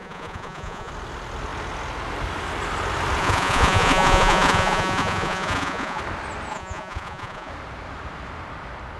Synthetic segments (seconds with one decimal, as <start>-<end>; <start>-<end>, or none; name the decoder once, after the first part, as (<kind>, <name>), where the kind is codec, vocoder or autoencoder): 0.0-0.9 (vocoder, Vocos); 3.2-6.0; 6.5-7.5